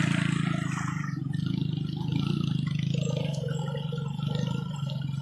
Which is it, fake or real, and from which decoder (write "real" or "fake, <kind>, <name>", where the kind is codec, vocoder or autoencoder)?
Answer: real